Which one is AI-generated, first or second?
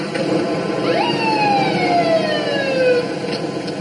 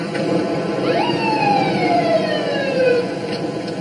second